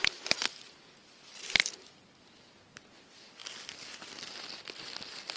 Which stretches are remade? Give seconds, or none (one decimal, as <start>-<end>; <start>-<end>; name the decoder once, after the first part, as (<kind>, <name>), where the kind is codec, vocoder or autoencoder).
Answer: none